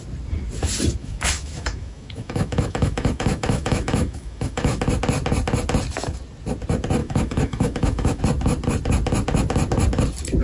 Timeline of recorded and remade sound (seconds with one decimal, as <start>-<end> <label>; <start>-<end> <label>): 0.0-1.0 recorded; 1.0-4.8 remade; 4.8-7.0 recorded; 7.0-8.2 remade; 8.2-10.4 recorded